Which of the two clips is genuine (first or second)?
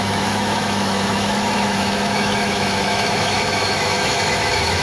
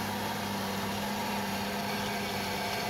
second